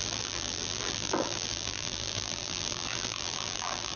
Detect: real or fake fake